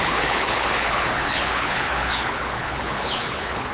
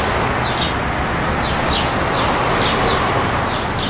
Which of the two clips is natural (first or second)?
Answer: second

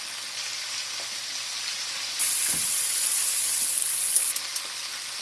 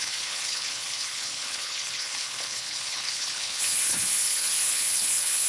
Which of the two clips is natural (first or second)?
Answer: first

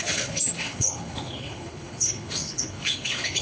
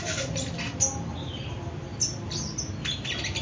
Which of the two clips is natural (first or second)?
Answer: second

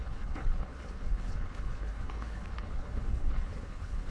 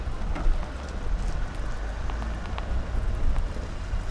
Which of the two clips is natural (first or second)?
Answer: second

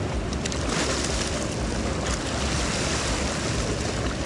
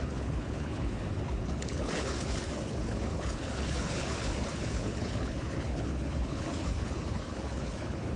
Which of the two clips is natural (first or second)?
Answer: first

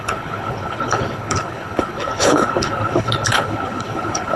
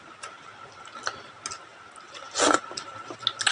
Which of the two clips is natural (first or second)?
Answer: second